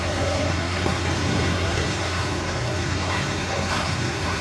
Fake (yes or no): yes